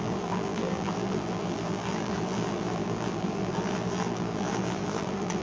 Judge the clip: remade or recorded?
remade